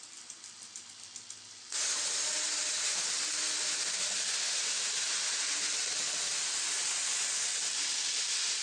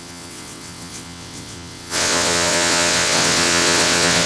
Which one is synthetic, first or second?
second